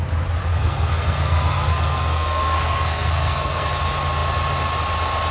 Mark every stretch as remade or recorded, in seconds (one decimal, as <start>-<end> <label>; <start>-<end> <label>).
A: 0.0-0.5 recorded; 0.5-3.7 remade; 3.7-5.3 recorded